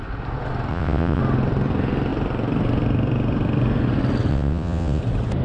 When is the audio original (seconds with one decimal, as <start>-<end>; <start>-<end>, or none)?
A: 0.0-0.7; 1.2-4.3; 5.0-5.4